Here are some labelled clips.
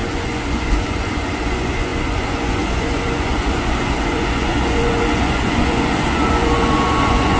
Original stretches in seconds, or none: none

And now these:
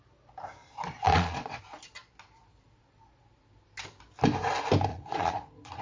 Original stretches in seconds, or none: 0.0-0.6; 1.6-4.9

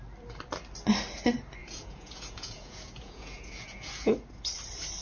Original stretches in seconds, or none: 0.0-1.6; 4.1-5.0

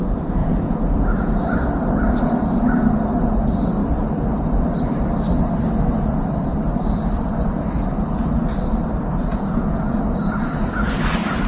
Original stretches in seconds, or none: 0.0-0.4; 1.4-9.3; 10.7-11.5

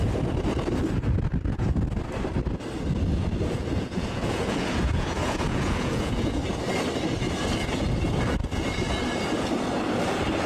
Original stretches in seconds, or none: 0.0-3.6; 6.4-10.5

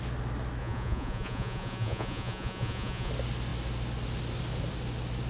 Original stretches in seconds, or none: 0.0-0.6; 3.1-5.3

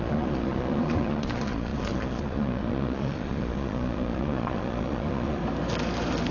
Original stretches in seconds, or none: 5.4-6.3

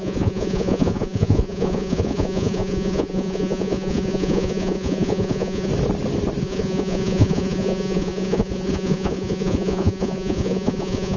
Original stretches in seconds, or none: 5.7-6.4